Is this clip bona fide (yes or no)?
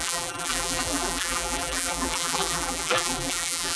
no